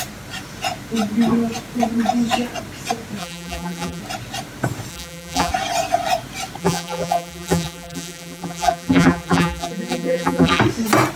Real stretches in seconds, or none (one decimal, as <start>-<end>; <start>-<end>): 0.0-3.2; 4.0-4.9; 5.5-6.6; 10.6-11.2